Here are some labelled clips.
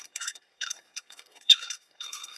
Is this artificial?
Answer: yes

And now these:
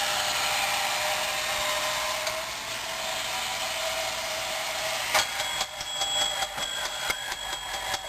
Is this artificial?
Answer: no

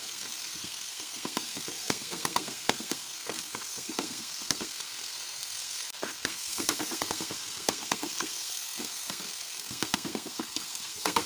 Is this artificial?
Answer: yes